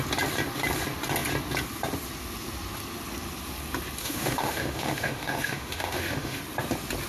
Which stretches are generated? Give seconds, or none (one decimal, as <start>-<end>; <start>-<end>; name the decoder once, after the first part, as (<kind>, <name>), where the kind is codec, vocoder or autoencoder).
4.0-6.4 (autoencoder, DAC-VAE)